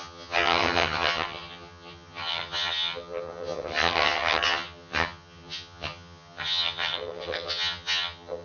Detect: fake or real fake